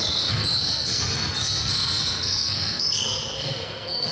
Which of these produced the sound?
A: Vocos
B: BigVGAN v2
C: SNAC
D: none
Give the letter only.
C